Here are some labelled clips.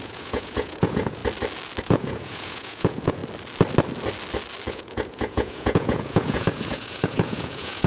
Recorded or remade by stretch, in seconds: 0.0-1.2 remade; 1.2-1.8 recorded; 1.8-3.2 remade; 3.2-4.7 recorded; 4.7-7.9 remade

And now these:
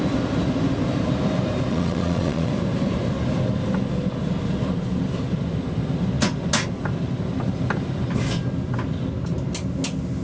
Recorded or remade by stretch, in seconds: 0.0-1.7 recorded; 1.7-2.5 remade; 2.5-10.2 recorded

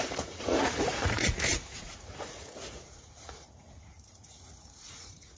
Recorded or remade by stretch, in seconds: 0.0-5.4 remade

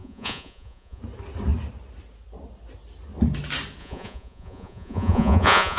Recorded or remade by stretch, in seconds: 0.0-1.0 remade; 1.0-3.8 recorded; 3.8-5.8 remade

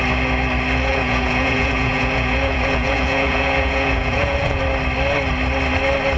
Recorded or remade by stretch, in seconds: 0.0-0.9 recorded; 0.9-4.6 remade; 4.6-6.2 recorded

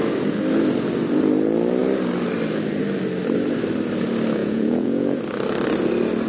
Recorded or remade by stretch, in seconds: 0.0-4.4 recorded; 4.4-5.2 remade; 5.2-6.3 recorded

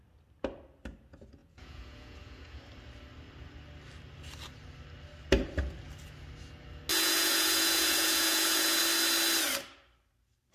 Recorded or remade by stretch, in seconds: 0.0-1.4 recorded; 1.4-2.6 remade; 2.6-6.9 recorded; 6.9-8.8 remade; 8.8-10.5 recorded

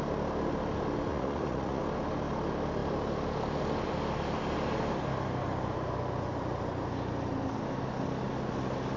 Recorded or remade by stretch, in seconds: 0.0-1.1 recorded; 1.1-1.8 remade; 1.8-9.0 recorded